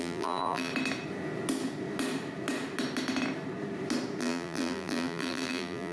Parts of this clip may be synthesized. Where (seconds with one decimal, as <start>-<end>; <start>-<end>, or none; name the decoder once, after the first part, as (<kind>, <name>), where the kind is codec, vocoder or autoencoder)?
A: 0.0-0.7 (vocoder, BigVGAN v2); 4.2-5.9